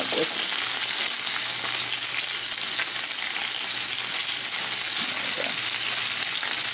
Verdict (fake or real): real